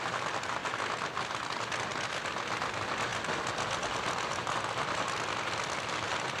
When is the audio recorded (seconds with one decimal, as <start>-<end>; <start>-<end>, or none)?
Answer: 0.0-6.4